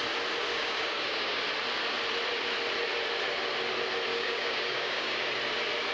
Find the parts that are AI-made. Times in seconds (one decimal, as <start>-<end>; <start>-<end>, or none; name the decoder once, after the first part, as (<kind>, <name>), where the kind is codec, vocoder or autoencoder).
0.5-1.4 (codec, DAC); 4.1-5.3